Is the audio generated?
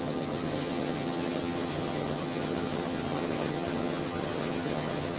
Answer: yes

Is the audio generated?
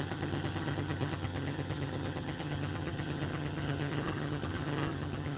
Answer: yes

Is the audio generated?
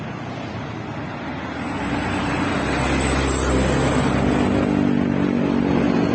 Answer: no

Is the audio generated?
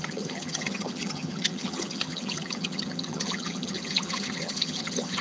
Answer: yes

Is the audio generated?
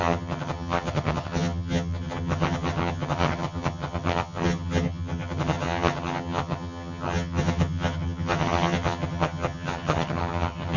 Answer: yes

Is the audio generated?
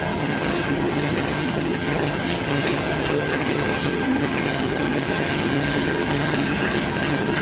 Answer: yes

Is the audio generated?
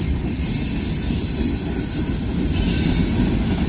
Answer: no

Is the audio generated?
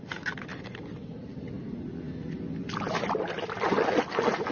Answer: no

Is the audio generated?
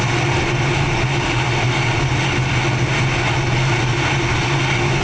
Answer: no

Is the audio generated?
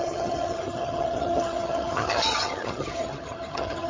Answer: yes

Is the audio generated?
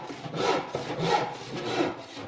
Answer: no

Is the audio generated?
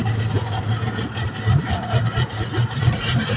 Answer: no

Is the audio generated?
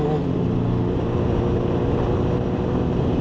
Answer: no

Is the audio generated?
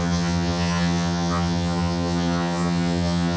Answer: yes